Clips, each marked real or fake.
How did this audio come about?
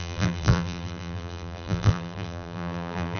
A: fake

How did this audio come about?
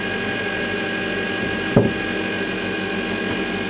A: real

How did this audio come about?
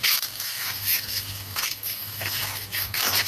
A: fake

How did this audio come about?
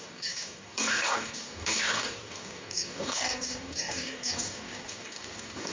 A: fake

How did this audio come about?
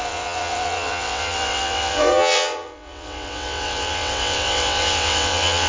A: fake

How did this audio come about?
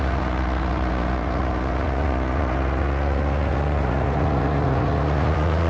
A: fake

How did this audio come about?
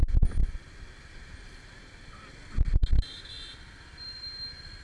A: real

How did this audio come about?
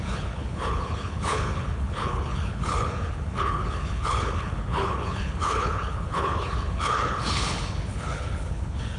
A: fake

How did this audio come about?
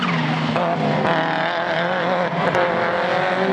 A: real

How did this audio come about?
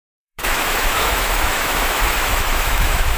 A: fake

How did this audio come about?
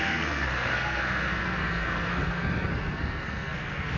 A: fake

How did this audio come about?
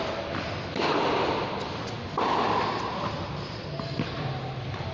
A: real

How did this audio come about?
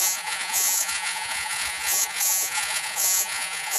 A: fake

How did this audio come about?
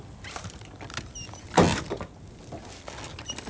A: real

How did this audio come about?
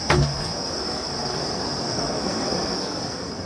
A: fake